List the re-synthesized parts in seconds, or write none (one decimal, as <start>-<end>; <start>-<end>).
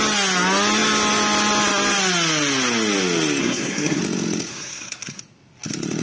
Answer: 3.4-4.0; 4.5-5.2